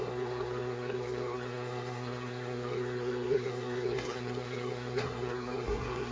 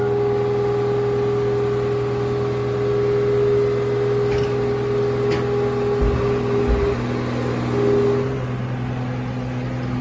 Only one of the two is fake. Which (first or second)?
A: first